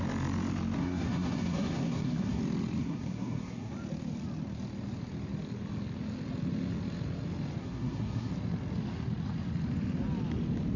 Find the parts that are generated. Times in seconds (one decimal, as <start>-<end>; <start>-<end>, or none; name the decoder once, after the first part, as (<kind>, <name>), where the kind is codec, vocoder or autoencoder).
0.8-2.4 (codec, SNAC); 2.8-3.7; 7.6-8.3